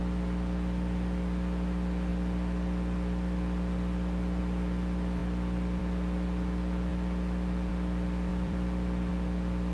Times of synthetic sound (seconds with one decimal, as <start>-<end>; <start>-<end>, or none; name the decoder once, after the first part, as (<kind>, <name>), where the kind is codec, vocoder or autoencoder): 8.3-9.1 (vocoder, BigVGAN v2)